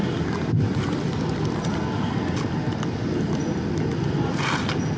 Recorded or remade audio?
recorded